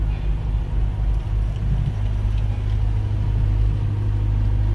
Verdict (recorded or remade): recorded